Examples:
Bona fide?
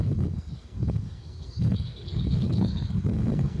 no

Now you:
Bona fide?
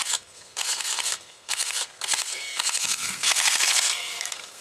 no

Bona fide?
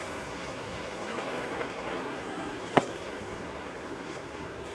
no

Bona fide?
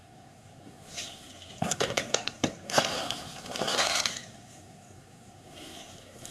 no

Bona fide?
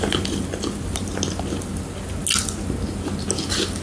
yes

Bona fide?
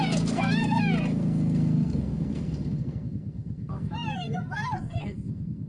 no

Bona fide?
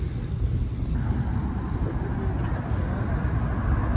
yes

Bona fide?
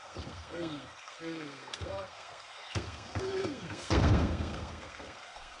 no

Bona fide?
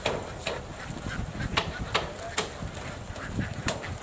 yes